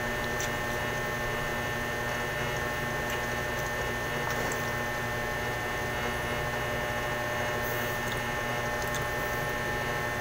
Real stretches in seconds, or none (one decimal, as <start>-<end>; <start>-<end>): 0.0-10.2